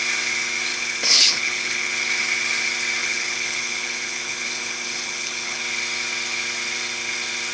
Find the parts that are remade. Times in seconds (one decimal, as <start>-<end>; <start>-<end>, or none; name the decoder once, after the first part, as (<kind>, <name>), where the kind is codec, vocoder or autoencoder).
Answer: 0.7-1.9 (codec, HILCodec); 3.0-5.6